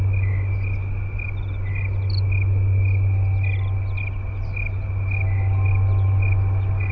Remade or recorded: recorded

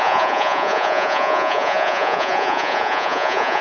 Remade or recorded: remade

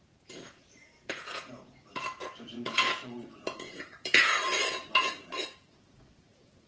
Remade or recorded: remade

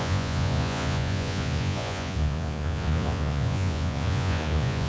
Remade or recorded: remade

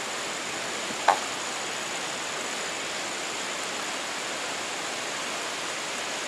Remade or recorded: recorded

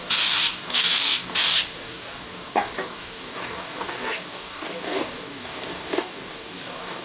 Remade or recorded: remade